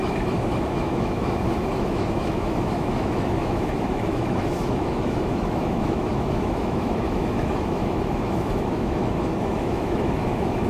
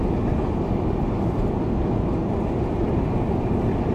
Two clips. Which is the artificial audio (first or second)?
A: first